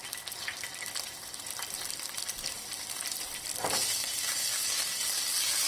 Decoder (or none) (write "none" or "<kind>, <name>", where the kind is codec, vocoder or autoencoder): none